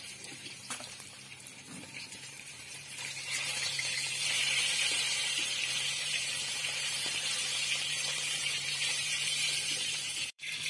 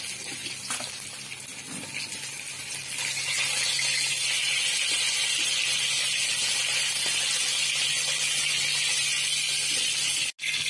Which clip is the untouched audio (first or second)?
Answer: second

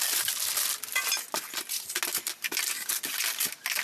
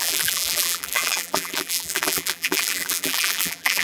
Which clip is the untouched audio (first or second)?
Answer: first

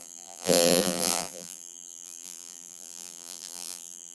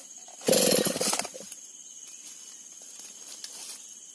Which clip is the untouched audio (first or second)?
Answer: second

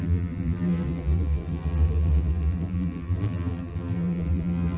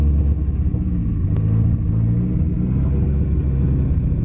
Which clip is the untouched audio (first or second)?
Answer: second